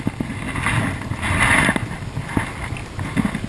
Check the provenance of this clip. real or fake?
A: real